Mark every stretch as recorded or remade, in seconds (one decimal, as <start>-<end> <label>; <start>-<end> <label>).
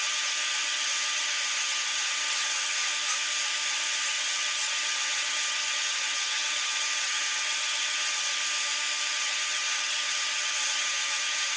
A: 0.0-2.9 remade; 2.9-3.7 recorded; 3.7-8.3 remade; 8.3-9.1 recorded; 9.1-11.6 remade